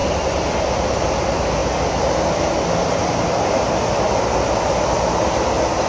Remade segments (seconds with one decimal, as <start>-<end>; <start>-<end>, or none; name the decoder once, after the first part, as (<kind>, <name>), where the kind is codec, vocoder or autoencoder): none